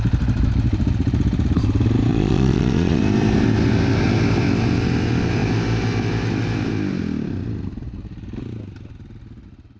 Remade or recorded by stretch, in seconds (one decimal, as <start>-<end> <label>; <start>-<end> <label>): 0.0-2.1 recorded; 2.1-3.0 remade; 3.0-9.8 recorded